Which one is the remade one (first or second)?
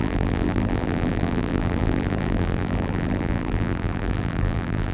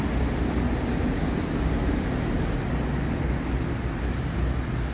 first